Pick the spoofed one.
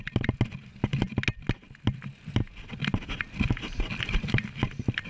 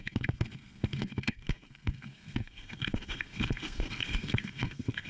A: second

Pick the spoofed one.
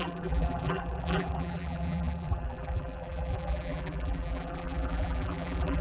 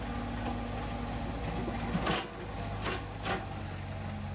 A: first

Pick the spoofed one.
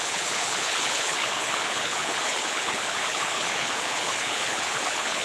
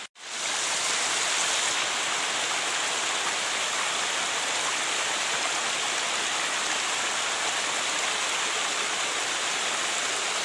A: first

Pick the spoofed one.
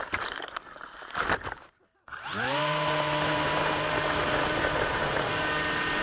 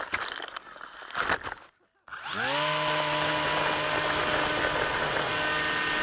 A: first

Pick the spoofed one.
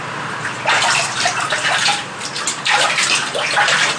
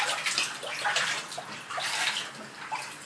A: first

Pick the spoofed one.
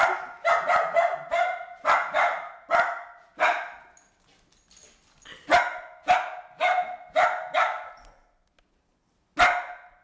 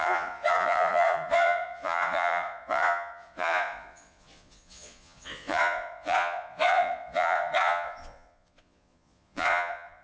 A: second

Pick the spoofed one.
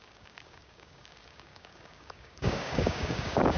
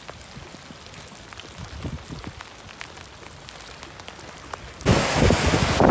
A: first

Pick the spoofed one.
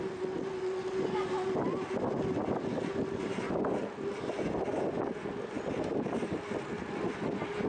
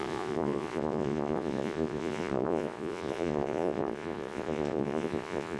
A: second